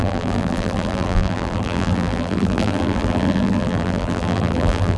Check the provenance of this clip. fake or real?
fake